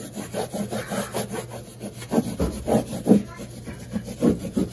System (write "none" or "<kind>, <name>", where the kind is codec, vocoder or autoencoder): none